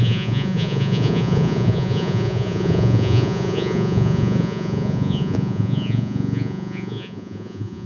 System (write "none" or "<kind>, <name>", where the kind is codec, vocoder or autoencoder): vocoder, Vocos